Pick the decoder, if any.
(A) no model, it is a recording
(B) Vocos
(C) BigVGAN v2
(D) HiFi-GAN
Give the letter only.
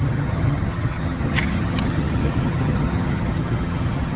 D